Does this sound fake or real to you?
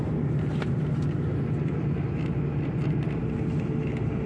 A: fake